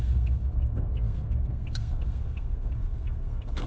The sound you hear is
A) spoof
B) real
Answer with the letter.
A